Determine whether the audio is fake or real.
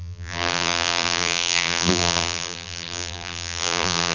fake